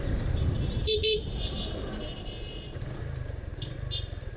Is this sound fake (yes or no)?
no